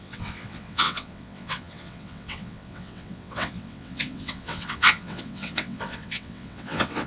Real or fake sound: fake